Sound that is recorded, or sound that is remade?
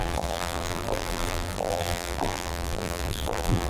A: remade